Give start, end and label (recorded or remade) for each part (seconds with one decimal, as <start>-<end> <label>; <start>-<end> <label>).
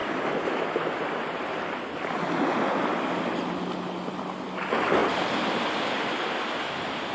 0.0-7.1 recorded